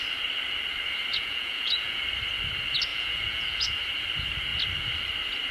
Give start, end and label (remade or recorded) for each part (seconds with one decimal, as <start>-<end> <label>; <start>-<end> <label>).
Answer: 0.0-1.1 recorded; 1.1-2.0 remade; 2.0-2.9 recorded; 2.9-3.7 remade; 3.7-5.5 recorded